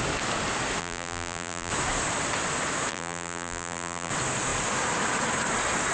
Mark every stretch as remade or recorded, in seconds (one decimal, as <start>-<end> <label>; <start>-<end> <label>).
0.0-0.8 recorded; 0.8-1.7 remade; 1.7-2.9 recorded; 2.9-4.1 remade; 4.1-5.9 recorded